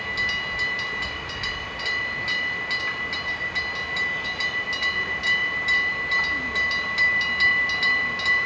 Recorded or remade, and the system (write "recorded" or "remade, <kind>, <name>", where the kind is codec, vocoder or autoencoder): recorded